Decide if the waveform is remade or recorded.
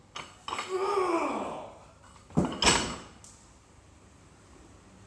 recorded